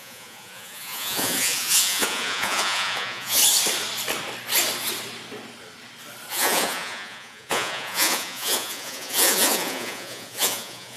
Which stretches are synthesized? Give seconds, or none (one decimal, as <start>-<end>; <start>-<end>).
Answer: 0.0-3.4; 6.3-11.0